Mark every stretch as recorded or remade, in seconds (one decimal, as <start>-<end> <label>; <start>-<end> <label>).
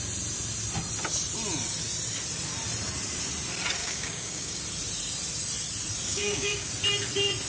0.0-3.8 recorded; 3.8-4.6 remade; 4.6-6.1 recorded; 6.1-6.7 remade; 6.7-7.5 recorded